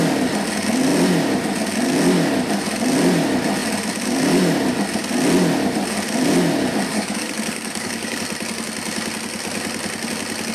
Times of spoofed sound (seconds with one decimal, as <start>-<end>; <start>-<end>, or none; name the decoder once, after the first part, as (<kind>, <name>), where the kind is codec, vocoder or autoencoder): 6.9-8.2 (codec, DAC)